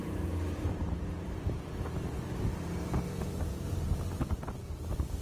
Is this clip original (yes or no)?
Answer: no